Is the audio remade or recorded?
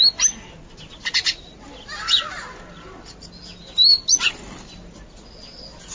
recorded